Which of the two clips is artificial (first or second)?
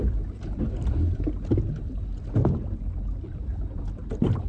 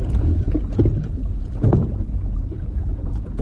second